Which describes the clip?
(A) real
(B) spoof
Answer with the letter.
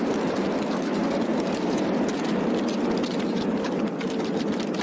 A